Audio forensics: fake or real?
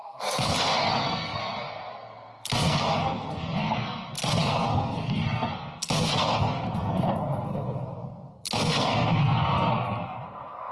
fake